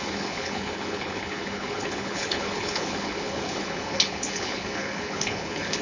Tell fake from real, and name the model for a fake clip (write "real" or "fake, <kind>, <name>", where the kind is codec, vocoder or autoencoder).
fake, codec, HILCodec